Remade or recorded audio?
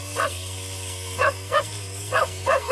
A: remade